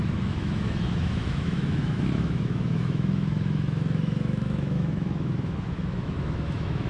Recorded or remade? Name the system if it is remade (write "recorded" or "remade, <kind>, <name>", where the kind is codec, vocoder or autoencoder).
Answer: remade, autoencoder, DAC-VAE